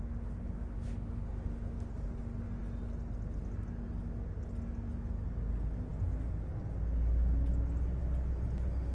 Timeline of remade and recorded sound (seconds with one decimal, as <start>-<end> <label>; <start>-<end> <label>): 0.0-0.4 recorded; 0.4-1.9 remade; 1.9-8.9 recorded